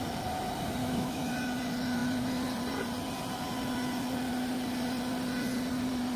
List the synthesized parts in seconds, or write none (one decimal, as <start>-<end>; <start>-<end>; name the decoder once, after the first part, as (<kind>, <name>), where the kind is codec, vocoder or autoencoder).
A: 0.8-1.3 (autoencoder, DAC-VAE)